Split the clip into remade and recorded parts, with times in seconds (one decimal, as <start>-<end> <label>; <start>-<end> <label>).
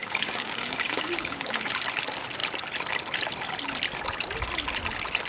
0.0-1.7 remade; 1.7-5.3 recorded